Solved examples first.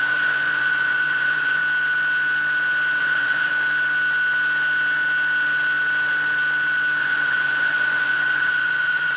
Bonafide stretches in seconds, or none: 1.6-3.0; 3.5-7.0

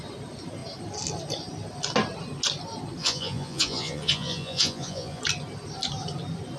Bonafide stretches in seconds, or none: 0.0-3.0; 5.2-6.6

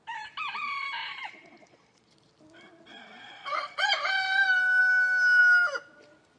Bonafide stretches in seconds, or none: 0.0-1.0; 2.1-2.9; 3.9-6.4

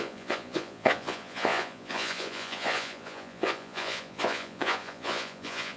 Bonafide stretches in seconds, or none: none

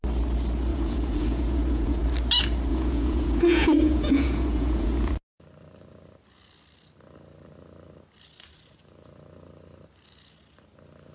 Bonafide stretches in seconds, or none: 0.0-0.7; 2.0-2.7; 5.1-11.1

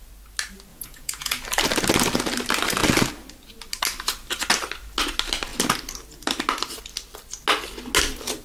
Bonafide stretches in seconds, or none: 0.0-0.7; 1.4-8.4